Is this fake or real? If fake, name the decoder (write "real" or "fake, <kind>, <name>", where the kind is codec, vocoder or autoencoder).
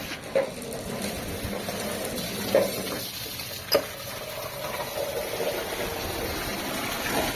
real